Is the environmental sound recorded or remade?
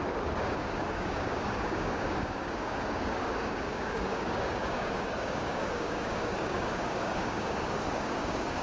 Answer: remade